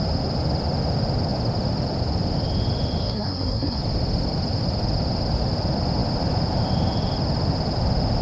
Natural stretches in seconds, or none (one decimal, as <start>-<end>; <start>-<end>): 0.0-3.0; 3.8-8.2